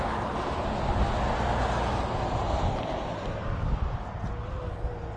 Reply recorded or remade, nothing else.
recorded